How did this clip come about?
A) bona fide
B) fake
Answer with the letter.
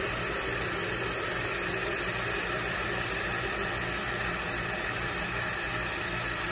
A